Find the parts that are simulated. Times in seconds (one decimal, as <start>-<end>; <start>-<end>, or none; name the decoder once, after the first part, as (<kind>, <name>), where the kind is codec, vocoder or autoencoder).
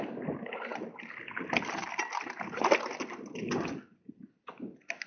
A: none